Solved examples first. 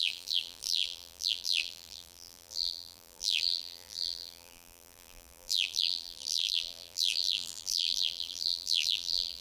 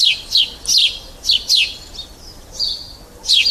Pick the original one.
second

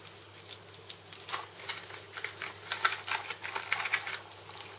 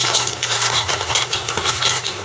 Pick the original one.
first